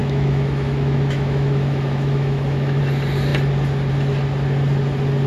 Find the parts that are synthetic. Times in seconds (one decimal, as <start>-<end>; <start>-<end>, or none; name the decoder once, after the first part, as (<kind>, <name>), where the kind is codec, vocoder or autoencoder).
0.0-2.8 (autoencoder, DAC-VAE)